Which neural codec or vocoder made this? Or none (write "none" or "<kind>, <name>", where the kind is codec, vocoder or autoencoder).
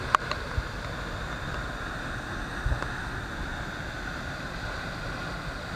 none